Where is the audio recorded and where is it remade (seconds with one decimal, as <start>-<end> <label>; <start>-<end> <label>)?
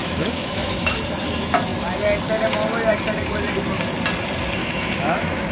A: 0.0-0.9 remade; 0.9-4.6 recorded; 4.6-5.5 remade